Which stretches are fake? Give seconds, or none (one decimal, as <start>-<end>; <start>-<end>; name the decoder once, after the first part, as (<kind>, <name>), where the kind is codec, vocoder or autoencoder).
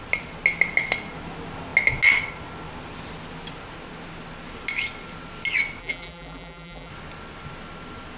5.8-6.9 (vocoder, BigVGAN v2)